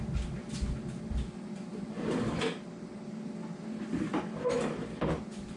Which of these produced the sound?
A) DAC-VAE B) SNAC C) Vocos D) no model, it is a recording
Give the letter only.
D